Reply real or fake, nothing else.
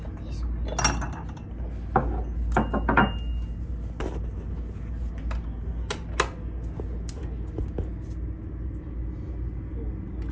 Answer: real